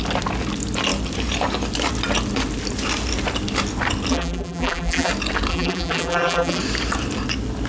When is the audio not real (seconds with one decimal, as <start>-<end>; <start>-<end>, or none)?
4.1-5.1; 5.5-6.6